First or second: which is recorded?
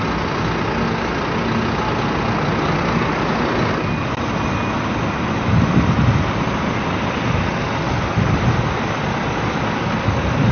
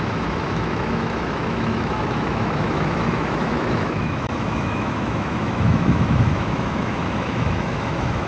first